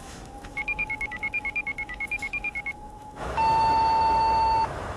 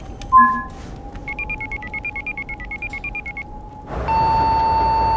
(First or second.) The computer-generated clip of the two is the first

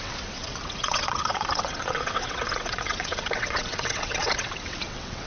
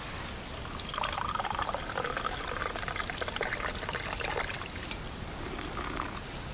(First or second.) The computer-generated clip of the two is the first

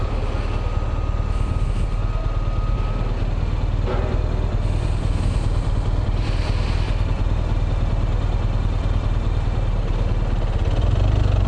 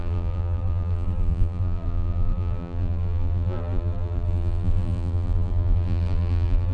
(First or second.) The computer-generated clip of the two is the second